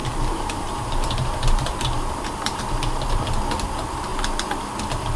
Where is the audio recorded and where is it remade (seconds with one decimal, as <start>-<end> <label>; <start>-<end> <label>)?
0.0-2.6 remade; 2.6-5.2 recorded